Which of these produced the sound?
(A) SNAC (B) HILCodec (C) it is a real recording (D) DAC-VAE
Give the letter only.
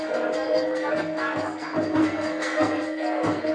A